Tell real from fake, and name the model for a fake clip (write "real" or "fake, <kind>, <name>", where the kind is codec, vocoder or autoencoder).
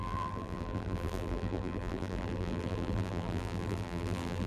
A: fake, vocoder, BigVGAN v2